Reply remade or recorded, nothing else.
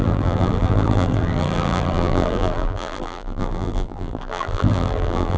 remade